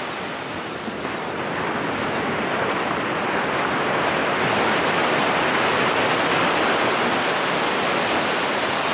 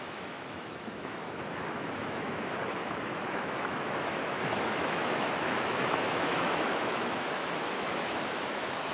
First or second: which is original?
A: first